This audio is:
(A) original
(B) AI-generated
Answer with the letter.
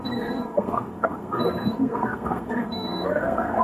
B